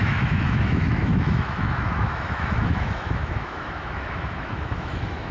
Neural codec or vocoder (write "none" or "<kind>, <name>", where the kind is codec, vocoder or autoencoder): autoencoder, DAC-VAE